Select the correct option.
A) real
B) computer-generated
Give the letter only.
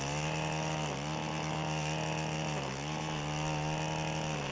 A